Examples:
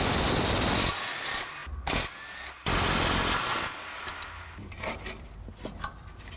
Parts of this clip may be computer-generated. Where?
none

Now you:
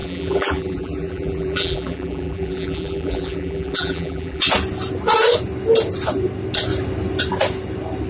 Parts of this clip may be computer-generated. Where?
0.0-4.4 (vocoder, BigVGAN v2)